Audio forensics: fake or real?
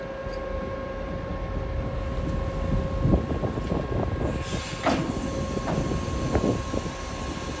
real